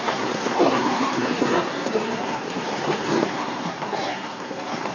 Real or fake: fake